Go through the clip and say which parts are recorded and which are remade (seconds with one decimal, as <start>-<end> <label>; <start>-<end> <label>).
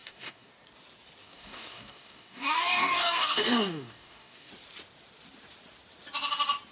0.0-0.5 remade; 0.5-1.2 recorded; 1.2-4.5 remade; 4.5-6.7 recorded